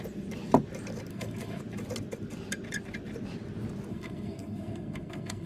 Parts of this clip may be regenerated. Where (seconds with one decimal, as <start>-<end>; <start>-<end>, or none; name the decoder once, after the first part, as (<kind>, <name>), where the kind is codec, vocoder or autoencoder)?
1.1-1.6 (codec, SNAC); 3.9-5.5